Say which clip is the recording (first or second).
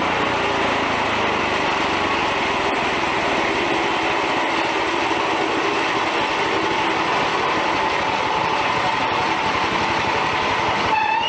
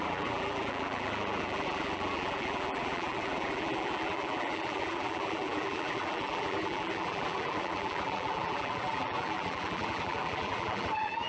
first